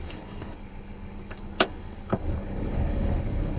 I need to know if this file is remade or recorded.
remade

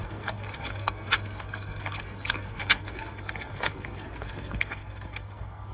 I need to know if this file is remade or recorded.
remade